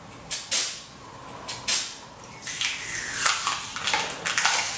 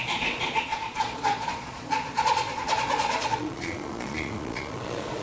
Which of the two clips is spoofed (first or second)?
second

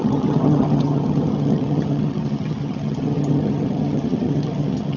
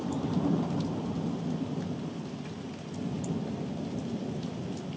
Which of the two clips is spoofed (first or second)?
first